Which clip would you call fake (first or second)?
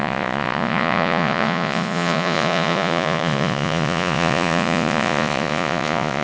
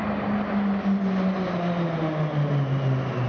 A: first